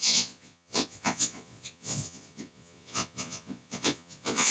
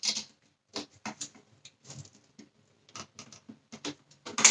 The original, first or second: second